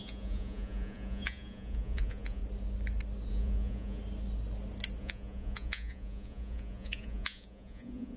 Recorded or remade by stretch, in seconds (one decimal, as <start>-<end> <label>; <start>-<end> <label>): 0.0-2.4 remade; 2.4-3.3 recorded; 3.3-4.0 remade; 4.0-5.0 recorded; 5.0-8.2 remade